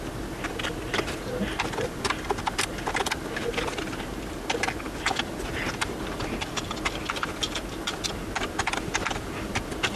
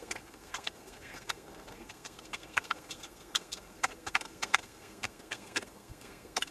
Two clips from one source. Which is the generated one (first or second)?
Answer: second